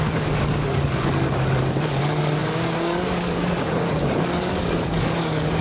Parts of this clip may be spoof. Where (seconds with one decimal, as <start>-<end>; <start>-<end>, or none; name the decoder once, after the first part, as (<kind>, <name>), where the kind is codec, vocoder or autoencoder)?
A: 0.0-5.6 (codec, DAC)